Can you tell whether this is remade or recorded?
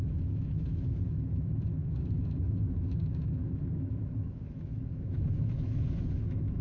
remade